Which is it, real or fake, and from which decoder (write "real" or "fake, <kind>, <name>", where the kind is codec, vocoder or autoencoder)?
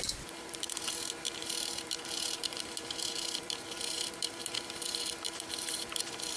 fake, vocoder, BigVGAN v2